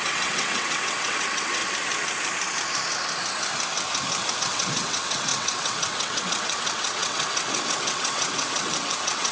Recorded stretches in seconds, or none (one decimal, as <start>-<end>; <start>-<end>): 1.6-4.3